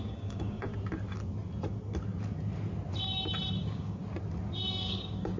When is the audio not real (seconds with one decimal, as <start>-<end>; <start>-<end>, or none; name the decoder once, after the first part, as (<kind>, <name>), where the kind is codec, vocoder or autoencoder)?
0.0-0.7 (codec, DAC); 3.6-4.0; 4.8-5.4

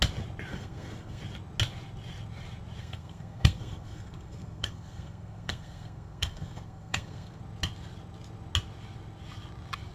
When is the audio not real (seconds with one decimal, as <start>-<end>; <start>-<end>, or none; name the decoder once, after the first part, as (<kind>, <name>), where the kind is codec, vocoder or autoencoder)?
0.5-1.2 (codec, SNAC); 2.8-7.4

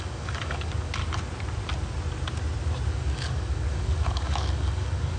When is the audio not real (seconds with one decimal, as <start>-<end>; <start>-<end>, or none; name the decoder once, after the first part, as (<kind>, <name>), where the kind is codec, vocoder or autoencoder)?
0.0-1.0 (codec, DAC); 2.9-5.2

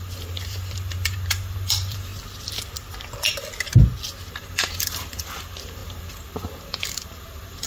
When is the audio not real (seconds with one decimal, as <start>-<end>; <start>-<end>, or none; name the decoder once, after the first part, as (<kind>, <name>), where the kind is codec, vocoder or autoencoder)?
0.0-2.1 (vocoder, BigVGAN v2); 4.3-7.7

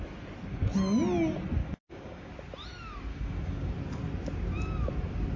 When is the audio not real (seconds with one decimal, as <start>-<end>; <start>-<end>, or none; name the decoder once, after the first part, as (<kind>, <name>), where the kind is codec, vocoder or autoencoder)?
1.6-2.3 (codec, DAC); 3.1-3.7

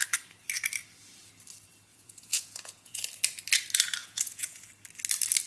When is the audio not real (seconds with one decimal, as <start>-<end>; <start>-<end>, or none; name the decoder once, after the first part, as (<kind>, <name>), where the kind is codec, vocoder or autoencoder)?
1.9-3.0 (vocoder, Vocos); 4.0-4.7

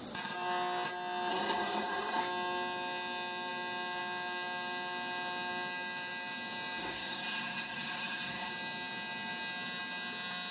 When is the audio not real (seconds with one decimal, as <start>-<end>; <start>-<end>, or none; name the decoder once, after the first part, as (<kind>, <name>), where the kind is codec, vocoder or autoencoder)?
1.3-2.2 (codec, SNAC); 6.8-8.5